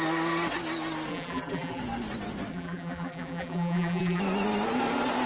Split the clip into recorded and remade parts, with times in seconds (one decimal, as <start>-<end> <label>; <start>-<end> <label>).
0.0-1.1 recorded; 1.1-1.8 remade; 1.8-2.5 recorded; 2.5-4.2 remade; 4.2-5.3 recorded